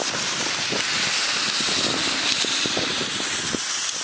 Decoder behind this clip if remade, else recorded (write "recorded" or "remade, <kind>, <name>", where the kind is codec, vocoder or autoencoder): recorded